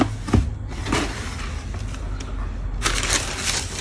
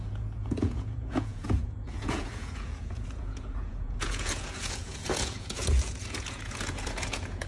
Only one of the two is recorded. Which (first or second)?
first